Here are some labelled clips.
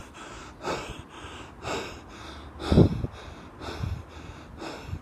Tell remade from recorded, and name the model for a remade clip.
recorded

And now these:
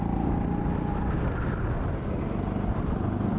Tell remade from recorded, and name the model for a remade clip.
recorded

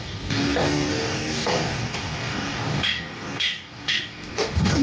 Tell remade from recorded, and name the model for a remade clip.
remade, codec, DAC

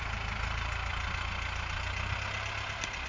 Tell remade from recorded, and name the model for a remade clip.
recorded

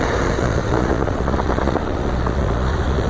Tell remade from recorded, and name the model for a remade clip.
remade, vocoder, Vocos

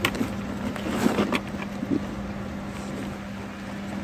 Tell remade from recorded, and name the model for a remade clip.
recorded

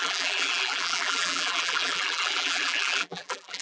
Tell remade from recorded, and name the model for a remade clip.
remade, vocoder, BigVGAN v2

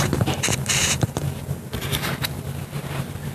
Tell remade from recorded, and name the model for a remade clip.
remade, vocoder, BigVGAN v2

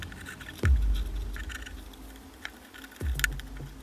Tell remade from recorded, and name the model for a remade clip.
recorded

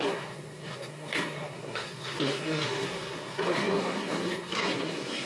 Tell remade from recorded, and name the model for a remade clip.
remade, codec, SNAC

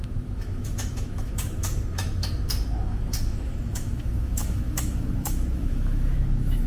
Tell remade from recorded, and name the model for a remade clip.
remade, autoencoder, DAC-VAE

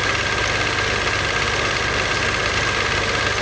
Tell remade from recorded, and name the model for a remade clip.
recorded